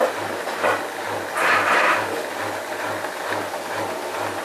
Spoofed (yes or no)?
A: no